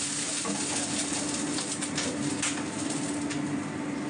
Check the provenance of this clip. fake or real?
real